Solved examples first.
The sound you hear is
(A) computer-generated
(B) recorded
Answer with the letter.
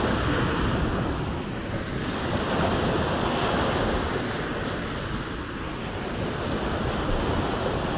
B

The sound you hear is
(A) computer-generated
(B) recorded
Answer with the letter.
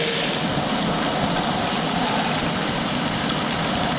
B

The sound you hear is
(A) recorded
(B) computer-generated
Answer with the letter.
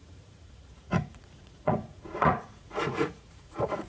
B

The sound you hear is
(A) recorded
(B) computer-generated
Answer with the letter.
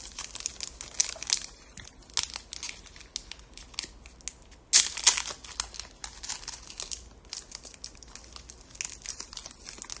A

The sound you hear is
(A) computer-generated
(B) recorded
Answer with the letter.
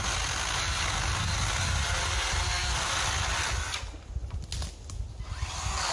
B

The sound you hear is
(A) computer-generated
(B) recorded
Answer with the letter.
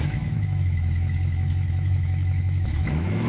A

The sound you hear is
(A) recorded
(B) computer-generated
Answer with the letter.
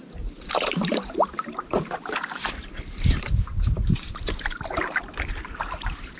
B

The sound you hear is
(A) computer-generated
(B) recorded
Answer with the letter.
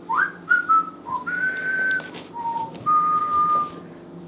B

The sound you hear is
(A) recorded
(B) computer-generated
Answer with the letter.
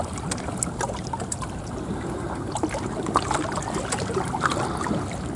A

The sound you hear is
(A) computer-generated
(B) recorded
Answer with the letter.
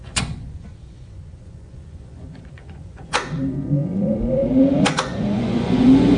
A